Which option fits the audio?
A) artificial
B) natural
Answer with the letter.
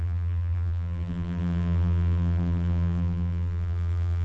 A